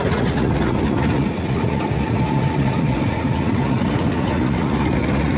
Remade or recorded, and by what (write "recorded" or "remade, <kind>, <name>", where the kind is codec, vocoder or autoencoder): remade, vocoder, Vocos